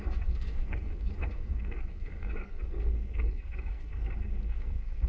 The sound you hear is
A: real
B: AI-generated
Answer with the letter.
B